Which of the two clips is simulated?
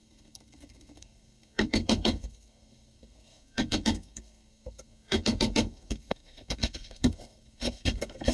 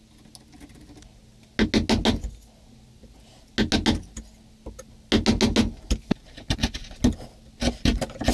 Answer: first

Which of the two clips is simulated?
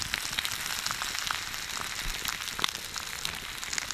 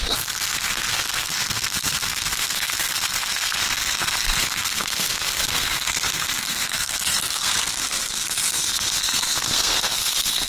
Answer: second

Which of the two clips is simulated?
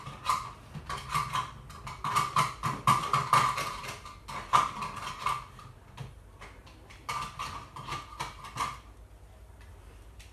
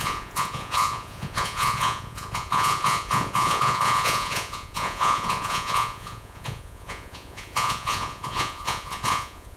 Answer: second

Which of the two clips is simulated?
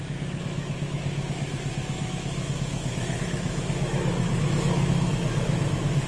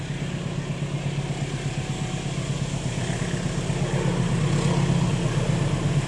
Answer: first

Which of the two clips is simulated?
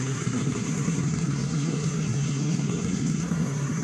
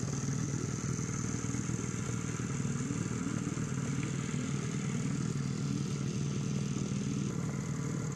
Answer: first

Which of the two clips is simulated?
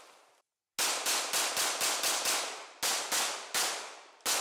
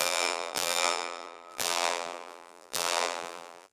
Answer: second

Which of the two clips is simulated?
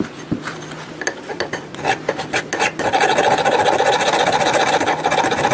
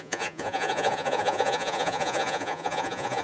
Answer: second